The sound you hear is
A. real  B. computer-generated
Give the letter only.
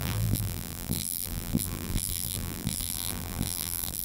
B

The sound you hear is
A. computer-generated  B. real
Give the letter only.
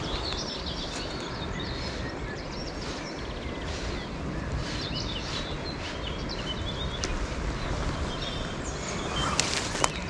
B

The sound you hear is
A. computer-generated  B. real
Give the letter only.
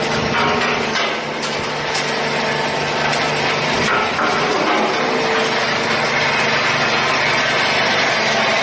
B